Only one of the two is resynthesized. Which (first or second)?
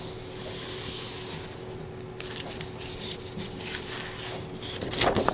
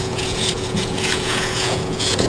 second